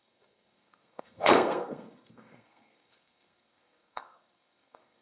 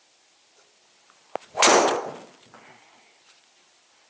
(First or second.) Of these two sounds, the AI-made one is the first